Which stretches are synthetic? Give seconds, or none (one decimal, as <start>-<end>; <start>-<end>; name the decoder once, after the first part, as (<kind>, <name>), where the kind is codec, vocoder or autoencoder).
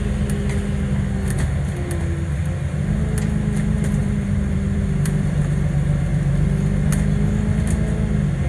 4.0-5.4 (vocoder, BigVGAN v2); 6.1-6.9